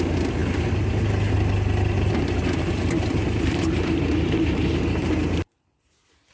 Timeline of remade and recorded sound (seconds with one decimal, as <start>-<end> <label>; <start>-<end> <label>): 0.0-3.2 recorded; 3.2-4.1 remade; 4.1-5.0 recorded; 5.0-5.6 remade; 5.6-6.3 recorded